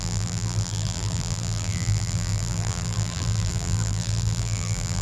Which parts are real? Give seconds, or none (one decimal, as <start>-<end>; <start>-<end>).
none